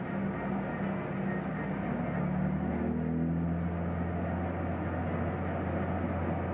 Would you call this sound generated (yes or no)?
no